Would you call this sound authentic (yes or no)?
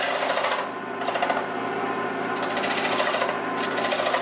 yes